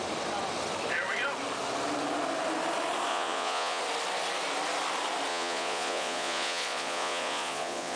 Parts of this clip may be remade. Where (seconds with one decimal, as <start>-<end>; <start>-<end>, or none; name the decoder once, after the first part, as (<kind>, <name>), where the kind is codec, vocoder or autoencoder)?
3.1-3.8 (vocoder, Vocos); 5.3-8.0